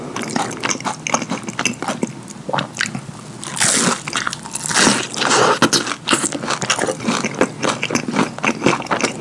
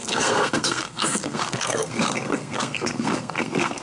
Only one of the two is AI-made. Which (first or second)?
second